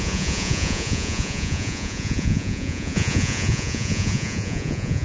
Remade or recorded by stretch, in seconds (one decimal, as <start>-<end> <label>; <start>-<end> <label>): 0.0-5.0 remade